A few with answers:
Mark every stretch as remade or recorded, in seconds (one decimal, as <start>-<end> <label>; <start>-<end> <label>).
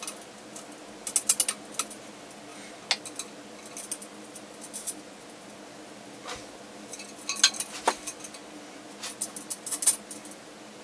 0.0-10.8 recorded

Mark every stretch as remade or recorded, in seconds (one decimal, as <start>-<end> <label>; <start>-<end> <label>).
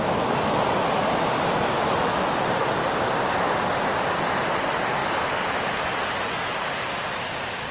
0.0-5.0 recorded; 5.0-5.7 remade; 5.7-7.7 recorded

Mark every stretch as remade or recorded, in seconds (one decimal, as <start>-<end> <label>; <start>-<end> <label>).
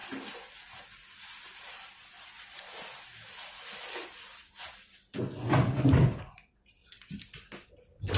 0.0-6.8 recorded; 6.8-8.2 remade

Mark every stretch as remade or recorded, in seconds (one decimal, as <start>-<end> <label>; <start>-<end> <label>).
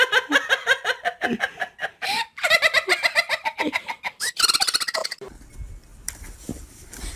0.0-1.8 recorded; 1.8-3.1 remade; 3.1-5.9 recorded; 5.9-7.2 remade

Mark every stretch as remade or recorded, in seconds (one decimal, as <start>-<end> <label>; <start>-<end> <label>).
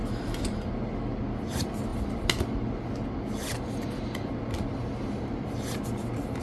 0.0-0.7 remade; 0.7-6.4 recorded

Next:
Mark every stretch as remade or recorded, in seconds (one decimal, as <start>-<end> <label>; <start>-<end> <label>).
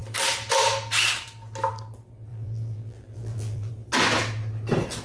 0.0-2.3 recorded; 2.3-3.7 remade; 3.7-5.0 recorded